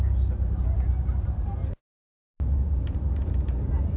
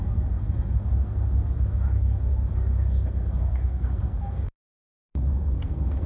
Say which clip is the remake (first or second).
second